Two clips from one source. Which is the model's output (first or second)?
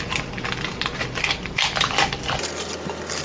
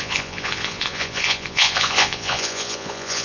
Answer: second